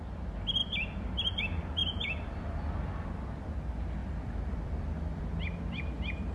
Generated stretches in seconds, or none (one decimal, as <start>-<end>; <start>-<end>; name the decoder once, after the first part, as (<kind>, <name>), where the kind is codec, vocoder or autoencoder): 0.6-1.4 (vocoder, BigVGAN v2); 4.0-5.2